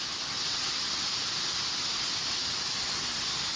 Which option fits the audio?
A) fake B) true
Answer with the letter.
B